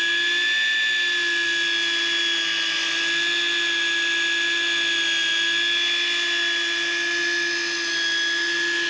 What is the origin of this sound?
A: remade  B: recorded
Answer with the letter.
B